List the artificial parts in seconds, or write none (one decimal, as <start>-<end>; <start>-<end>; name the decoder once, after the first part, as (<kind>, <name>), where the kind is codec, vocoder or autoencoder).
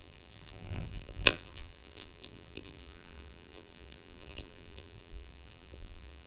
0.0-6.3 (vocoder, BigVGAN v2)